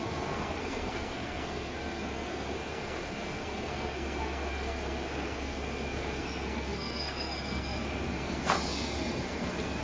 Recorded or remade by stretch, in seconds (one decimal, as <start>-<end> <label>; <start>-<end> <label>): 0.0-9.8 remade